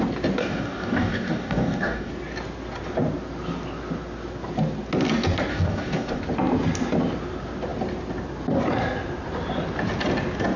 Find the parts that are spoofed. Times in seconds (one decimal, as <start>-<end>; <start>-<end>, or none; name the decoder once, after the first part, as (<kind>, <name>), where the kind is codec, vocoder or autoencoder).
0.4-2.1 (codec, DAC); 5.5-6.2